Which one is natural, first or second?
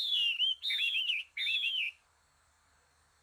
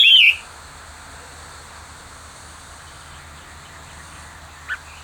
second